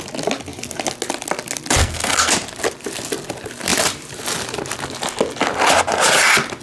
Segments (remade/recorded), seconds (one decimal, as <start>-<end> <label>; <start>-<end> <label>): 0.0-1.8 recorded; 1.8-2.3 remade; 2.3-6.6 recorded